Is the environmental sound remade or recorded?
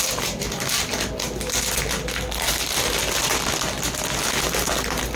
recorded